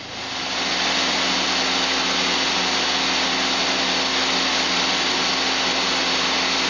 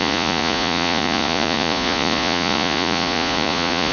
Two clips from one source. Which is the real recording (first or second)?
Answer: first